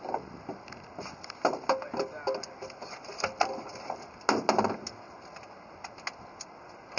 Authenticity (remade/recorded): recorded